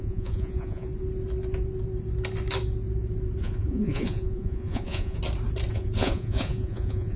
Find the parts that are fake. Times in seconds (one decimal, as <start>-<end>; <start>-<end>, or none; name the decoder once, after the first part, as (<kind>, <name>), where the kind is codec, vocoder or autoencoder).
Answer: 0.0-0.9 (vocoder, Vocos); 3.4-5.2; 5.7-7.2